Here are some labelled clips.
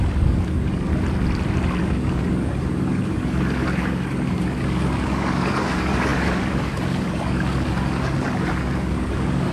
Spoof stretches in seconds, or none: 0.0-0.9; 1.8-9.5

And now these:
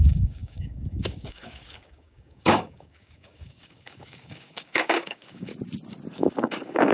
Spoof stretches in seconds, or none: 0.0-5.5; 6.1-6.9

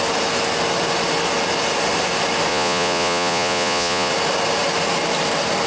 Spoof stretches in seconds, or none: 2.5-4.1

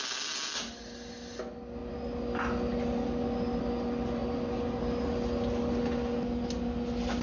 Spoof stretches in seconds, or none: none

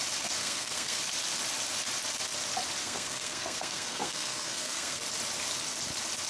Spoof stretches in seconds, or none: 0.4-1.0; 2.8-5.0

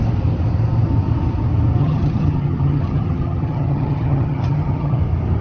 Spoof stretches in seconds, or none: 1.8-5.0